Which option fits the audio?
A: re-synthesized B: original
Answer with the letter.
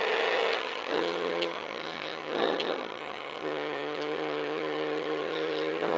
A